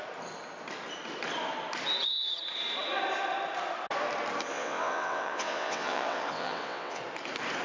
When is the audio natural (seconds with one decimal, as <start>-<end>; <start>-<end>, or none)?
0.0-4.5; 7.0-7.6